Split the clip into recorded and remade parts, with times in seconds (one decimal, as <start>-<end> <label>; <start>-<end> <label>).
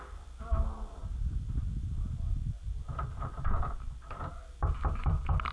0.0-1.0 recorded; 1.0-4.3 remade; 4.3-5.5 recorded